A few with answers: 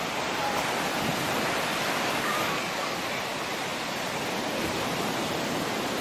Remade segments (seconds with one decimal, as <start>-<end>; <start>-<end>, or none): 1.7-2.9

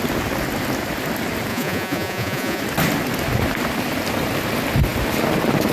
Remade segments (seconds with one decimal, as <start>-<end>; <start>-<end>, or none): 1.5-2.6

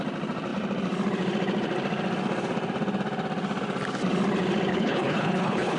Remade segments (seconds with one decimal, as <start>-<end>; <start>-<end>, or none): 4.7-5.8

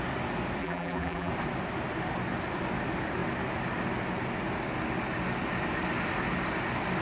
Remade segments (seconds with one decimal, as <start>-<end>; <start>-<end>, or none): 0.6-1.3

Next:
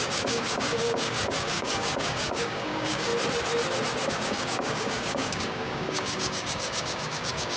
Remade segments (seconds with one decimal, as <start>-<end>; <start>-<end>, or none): 0.0-3.1; 4.1-7.6

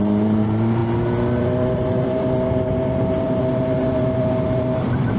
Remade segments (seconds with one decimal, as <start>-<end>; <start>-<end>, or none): 0.0-0.8; 1.4-5.2